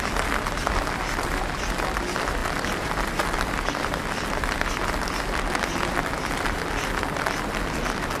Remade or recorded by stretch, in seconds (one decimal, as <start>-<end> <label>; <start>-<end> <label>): 0.0-8.2 recorded